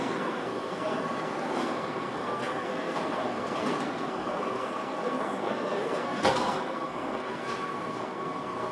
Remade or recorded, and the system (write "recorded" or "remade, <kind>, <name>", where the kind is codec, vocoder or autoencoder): remade, codec, SNAC